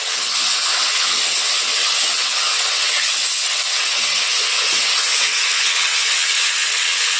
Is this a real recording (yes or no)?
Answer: no